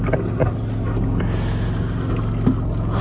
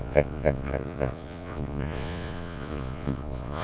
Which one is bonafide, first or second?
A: first